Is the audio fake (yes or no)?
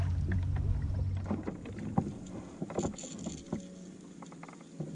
no